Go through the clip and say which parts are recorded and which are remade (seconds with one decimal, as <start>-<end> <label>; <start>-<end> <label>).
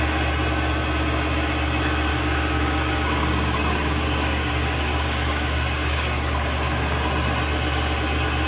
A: 0.0-2.1 recorded; 2.1-7.0 remade; 7.0-8.5 recorded